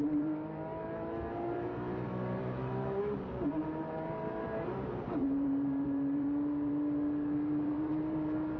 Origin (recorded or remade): remade